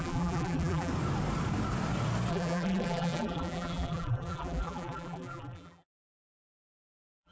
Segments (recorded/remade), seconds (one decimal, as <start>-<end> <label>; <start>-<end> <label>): 0.0-0.9 remade; 0.9-2.3 recorded; 2.3-7.3 remade